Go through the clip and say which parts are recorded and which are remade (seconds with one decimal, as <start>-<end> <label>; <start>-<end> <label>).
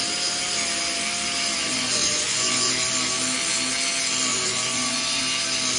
0.0-1.6 recorded; 1.6-2.7 remade; 2.7-4.3 recorded; 4.3-5.2 remade; 5.2-5.8 recorded